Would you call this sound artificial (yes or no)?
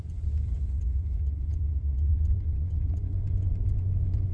yes